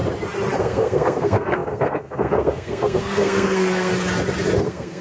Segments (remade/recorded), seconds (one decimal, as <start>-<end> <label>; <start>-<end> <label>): 0.0-0.6 recorded; 0.6-3.9 remade; 3.9-4.6 recorded; 4.6-5.0 remade